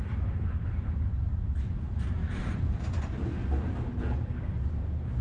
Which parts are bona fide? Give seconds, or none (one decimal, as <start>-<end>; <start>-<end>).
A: 0.0-5.2